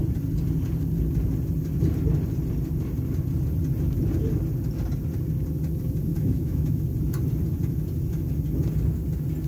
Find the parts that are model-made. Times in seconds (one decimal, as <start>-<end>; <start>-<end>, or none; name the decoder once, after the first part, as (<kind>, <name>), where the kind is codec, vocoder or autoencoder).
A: 6.1-6.8 (autoencoder, DAC-VAE)